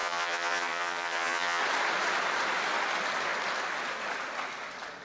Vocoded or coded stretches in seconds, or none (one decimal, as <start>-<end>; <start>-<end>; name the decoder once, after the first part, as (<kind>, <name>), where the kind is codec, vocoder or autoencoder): 0.0-1.6 (vocoder, HiFi-GAN)